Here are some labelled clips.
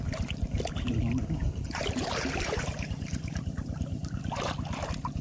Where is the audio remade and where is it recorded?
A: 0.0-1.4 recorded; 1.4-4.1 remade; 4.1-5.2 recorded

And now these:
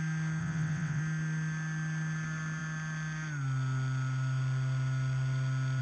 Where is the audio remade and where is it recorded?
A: 0.0-0.4 recorded; 0.4-1.0 remade; 1.0-5.8 recorded

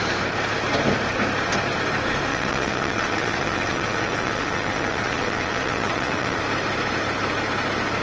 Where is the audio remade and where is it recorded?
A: 0.0-2.3 recorded; 2.3-6.4 remade; 6.4-8.0 recorded

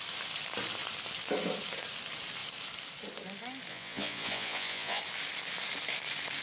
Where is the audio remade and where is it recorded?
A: 0.0-3.7 recorded; 3.7-5.0 remade; 5.0-6.4 recorded